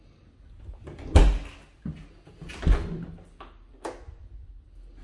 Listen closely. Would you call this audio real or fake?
real